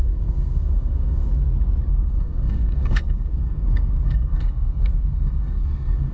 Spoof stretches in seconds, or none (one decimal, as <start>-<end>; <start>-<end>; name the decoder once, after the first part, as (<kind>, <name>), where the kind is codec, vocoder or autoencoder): 0.0-1.3 (codec, SNAC); 1.9-6.1